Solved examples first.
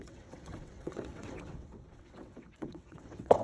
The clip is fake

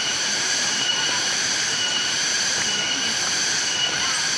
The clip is fake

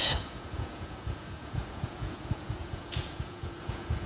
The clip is fake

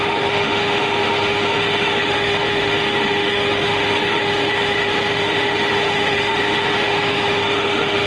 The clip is fake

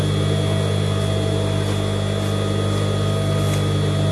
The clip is real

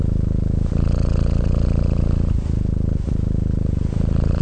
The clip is real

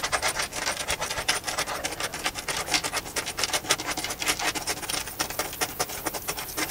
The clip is real